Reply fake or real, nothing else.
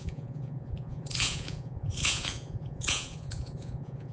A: fake